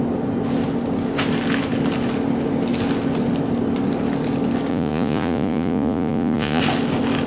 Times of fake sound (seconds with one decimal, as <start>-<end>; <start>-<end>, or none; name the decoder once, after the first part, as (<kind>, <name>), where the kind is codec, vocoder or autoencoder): 4.7-6.6 (vocoder, Vocos)